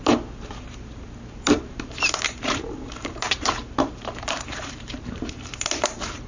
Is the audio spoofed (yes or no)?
yes